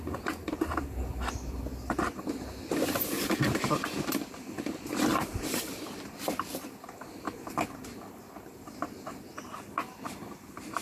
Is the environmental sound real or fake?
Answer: real